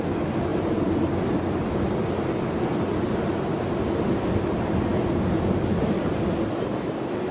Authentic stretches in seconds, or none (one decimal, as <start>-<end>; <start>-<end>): 0.0-7.3